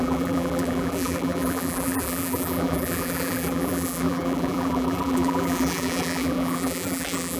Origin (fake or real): fake